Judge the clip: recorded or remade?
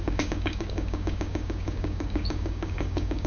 remade